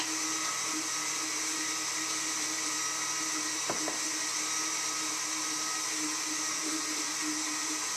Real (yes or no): yes